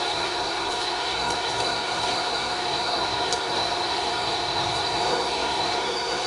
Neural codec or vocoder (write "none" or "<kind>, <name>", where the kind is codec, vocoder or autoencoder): codec, SNAC